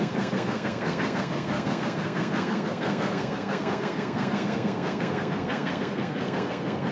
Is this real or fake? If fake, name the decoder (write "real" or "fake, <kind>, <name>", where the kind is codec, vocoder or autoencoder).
fake, codec, SNAC